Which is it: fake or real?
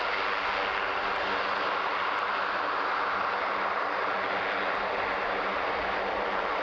real